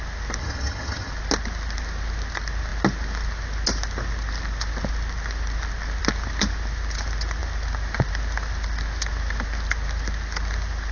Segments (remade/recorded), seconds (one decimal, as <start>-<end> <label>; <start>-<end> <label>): 0.0-0.4 recorded; 0.4-1.1 remade; 1.1-10.9 recorded